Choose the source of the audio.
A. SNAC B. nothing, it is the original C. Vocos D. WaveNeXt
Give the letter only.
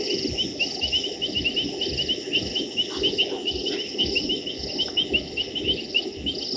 B